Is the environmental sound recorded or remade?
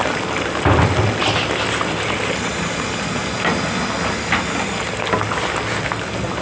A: recorded